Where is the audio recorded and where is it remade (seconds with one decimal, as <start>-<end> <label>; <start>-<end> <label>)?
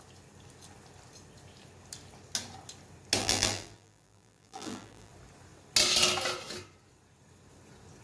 0.0-3.2 recorded; 3.2-5.1 remade; 5.1-8.0 recorded